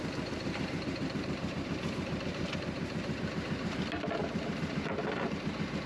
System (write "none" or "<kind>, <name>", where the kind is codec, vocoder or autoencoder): vocoder, BigVGAN v2